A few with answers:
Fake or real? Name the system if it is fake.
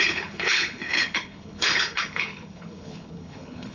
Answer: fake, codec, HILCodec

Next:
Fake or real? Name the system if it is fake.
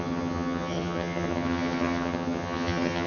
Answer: fake, vocoder, HiFi-GAN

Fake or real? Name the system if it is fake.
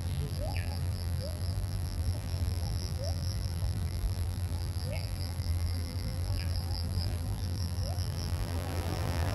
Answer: fake, vocoder, BigVGAN v2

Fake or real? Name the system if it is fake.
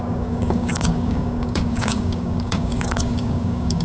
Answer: fake, codec, DAC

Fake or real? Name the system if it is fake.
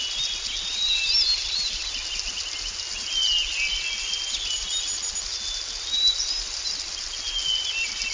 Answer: real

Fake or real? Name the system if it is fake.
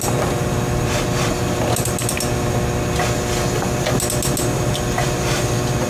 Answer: real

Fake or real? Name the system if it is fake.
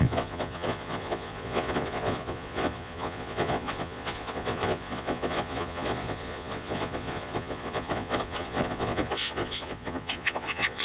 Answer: fake, vocoder, Vocos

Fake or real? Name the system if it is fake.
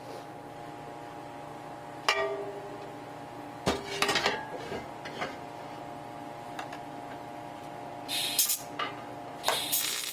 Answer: real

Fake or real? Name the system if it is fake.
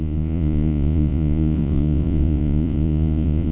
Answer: fake, vocoder, Vocos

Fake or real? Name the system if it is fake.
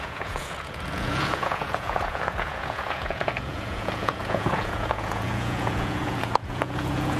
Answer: fake, vocoder, Vocos